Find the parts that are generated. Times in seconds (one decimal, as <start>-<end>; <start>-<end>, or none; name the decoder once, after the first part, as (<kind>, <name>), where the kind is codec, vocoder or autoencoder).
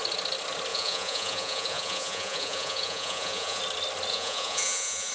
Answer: 0.7-3.6 (vocoder, Vocos); 4.1-5.1